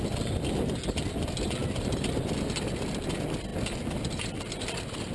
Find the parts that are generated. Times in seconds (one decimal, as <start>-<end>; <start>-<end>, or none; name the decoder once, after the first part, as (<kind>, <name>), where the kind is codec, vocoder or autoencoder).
none